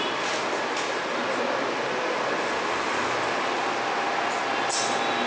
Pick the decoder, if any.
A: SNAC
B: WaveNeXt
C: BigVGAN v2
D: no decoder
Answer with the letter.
D